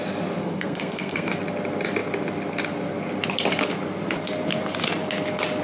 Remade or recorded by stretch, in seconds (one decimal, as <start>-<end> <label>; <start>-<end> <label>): 0.0-0.4 recorded; 0.4-1.3 remade; 1.3-5.6 recorded